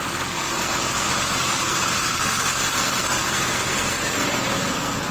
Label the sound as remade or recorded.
remade